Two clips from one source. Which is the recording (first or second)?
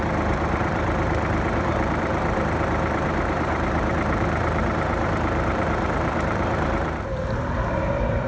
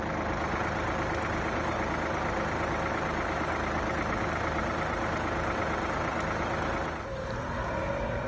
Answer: second